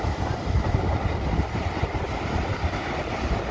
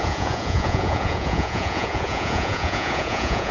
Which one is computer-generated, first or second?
second